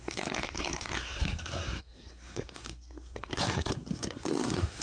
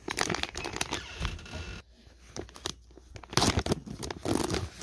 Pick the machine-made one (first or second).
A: first